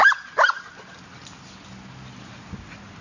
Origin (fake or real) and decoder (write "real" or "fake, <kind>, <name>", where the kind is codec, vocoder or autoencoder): real